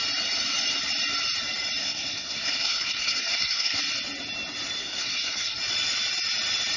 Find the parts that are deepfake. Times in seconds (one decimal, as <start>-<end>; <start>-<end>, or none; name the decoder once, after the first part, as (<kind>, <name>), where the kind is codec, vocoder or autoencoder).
1.8-3.8 (codec, SNAC); 4.8-5.6